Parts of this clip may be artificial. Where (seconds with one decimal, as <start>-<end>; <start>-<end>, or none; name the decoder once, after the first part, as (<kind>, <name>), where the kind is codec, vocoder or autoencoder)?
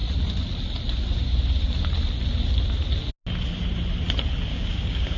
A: 4.5-5.2 (codec, DAC)